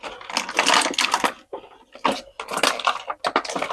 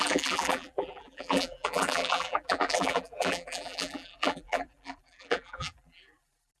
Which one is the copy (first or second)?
second